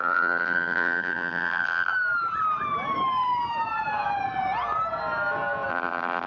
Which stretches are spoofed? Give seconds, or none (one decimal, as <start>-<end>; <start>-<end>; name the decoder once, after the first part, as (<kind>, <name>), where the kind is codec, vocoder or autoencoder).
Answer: 0.0-1.9 (vocoder, BigVGAN v2); 5.7-6.3